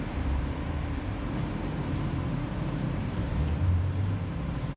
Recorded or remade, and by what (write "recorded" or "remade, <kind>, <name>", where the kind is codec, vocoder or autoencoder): remade, vocoder, BigVGAN v2